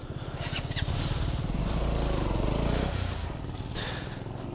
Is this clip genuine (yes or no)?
yes